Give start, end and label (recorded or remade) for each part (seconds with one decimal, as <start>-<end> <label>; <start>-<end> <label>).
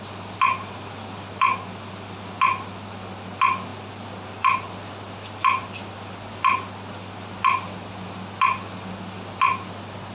0.0-10.1 recorded